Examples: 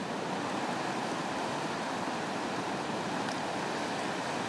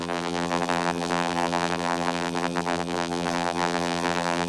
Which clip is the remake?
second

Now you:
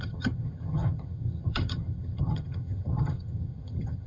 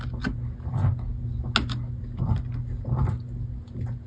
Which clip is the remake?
first